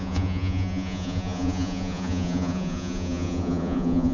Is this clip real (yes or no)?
no